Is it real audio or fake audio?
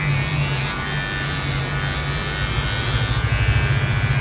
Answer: real